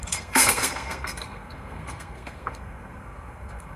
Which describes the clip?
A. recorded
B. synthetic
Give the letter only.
B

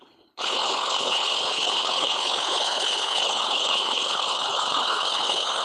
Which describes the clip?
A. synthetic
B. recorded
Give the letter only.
A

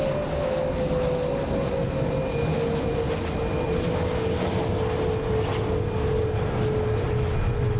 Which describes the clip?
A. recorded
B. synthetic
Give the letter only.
A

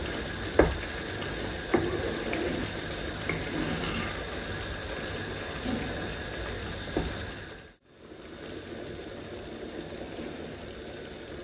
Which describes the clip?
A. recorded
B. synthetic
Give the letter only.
A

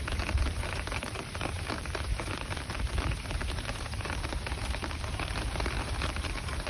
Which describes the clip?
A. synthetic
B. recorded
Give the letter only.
A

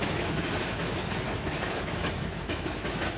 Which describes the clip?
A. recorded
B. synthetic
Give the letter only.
B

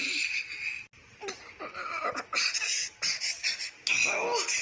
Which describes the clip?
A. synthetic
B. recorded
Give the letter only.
B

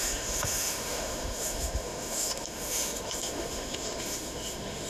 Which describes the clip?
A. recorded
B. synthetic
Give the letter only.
B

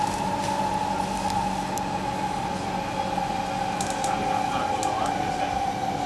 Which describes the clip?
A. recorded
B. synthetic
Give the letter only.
A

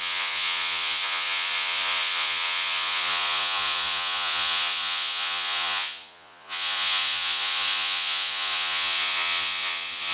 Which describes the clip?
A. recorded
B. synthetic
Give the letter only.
B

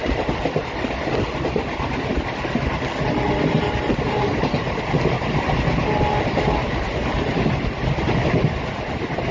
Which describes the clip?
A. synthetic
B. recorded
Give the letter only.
B